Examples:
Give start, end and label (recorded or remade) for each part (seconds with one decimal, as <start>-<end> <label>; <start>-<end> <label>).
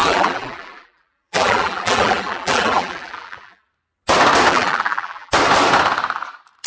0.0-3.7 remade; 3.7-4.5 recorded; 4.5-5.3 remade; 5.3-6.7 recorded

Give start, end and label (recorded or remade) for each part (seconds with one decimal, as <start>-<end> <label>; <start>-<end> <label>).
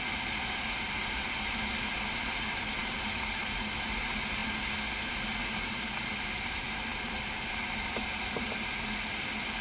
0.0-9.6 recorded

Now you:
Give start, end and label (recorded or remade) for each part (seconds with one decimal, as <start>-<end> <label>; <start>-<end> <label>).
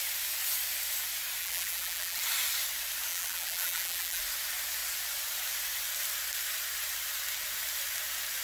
0.0-1.4 recorded; 1.4-2.2 remade; 2.2-3.1 recorded; 3.1-4.2 remade; 4.2-8.4 recorded